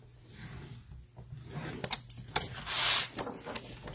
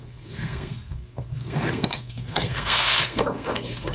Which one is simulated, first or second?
second